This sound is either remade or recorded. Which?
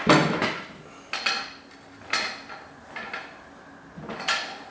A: recorded